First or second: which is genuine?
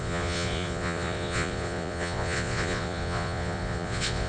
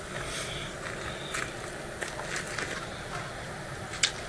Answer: second